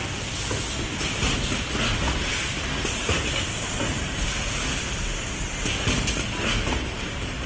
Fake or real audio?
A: real